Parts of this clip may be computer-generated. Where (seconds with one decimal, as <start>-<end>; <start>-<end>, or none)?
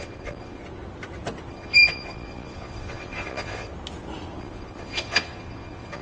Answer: 0.0-0.6; 1.5-3.7; 4.4-6.0